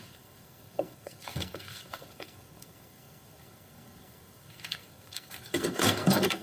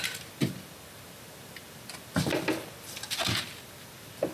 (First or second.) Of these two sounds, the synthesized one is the first